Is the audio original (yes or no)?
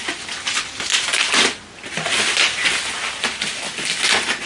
yes